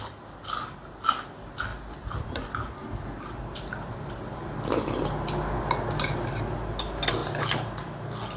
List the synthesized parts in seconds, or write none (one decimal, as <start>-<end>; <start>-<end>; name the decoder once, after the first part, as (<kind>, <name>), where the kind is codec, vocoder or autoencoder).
none